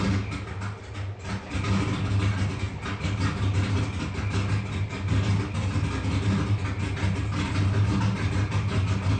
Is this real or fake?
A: real